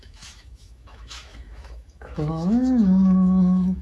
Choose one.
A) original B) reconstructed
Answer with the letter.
B